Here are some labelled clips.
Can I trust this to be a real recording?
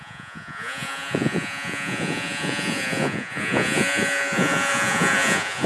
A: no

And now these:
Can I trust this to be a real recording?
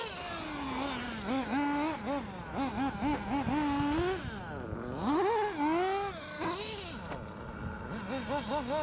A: yes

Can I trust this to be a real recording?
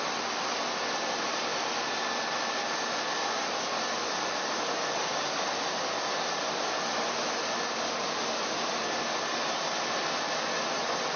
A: yes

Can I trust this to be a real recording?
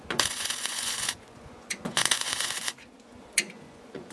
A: no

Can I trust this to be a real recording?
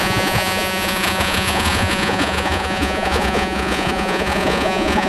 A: no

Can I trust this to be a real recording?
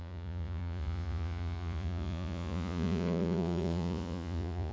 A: no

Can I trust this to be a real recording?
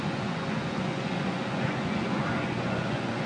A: no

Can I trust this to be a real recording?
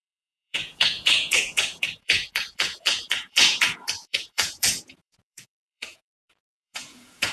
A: no